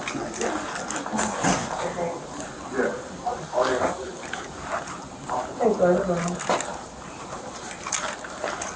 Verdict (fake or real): real